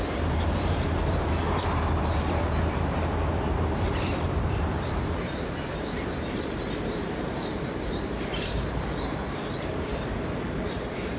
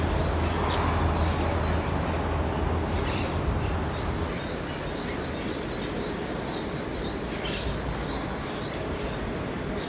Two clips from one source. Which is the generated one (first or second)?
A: first